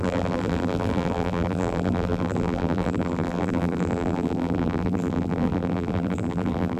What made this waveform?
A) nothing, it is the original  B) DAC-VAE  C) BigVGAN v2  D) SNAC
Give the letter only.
C